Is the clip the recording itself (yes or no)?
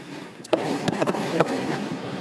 no